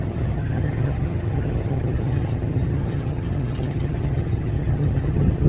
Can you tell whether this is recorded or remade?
remade